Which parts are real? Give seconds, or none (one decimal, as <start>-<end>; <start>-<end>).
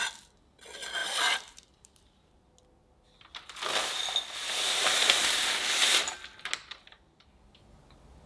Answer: 0.0-1.0; 2.3-8.3